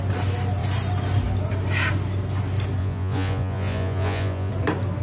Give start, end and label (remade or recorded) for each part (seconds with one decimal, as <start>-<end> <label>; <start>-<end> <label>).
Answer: 0.0-2.8 recorded; 2.8-4.5 remade; 4.5-5.0 recorded